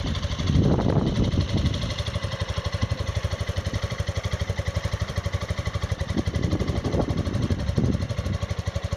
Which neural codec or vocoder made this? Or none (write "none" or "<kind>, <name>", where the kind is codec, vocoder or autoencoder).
vocoder, BigVGAN v2